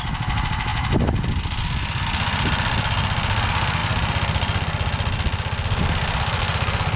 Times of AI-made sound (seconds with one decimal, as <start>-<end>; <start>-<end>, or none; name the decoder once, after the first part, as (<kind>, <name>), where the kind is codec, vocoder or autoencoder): none